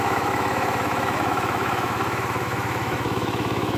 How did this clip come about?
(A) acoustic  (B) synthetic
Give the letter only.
B